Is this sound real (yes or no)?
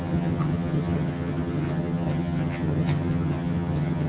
no